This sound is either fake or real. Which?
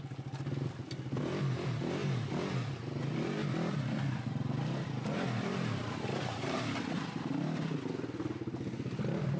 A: real